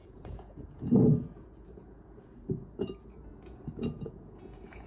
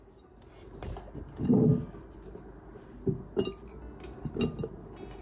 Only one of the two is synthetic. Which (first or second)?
first